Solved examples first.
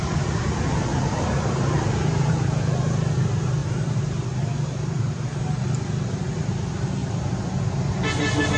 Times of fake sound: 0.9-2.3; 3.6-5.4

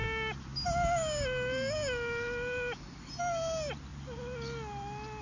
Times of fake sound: none

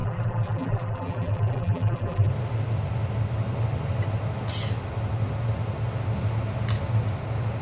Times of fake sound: 0.0-2.3

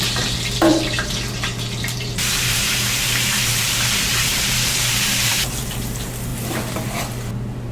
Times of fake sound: 0.7-5.3

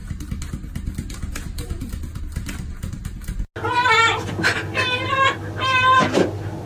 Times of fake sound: none